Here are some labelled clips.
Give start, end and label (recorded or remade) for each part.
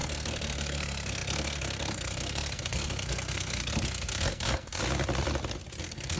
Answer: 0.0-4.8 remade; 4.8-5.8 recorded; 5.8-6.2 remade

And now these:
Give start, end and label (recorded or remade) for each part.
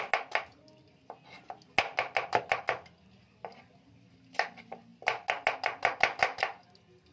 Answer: 0.0-7.1 recorded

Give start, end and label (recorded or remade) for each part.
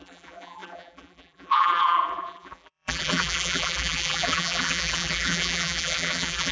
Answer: 0.0-6.5 remade